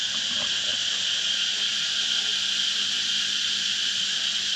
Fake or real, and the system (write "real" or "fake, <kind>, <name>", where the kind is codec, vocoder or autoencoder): real